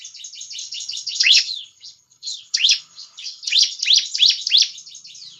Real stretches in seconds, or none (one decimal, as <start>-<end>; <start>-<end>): 0.0-0.6; 3.8-5.4